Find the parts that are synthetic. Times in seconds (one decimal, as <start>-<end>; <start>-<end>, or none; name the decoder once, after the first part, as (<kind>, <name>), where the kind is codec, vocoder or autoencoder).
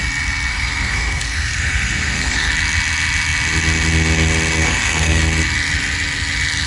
0.5-2.5 (codec, SNAC); 4.6-5.2